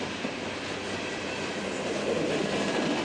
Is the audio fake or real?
real